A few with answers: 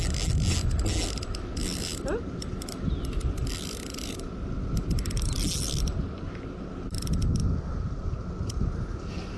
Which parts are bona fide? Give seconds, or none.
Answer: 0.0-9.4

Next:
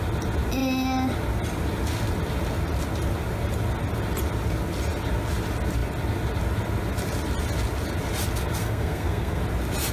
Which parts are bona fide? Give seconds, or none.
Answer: 0.0-8.6; 9.4-9.9